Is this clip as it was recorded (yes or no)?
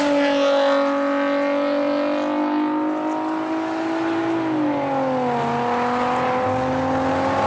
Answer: yes